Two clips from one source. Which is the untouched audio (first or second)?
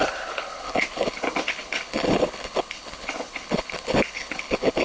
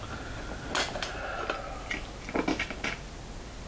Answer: second